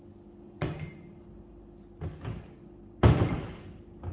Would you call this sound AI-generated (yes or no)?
no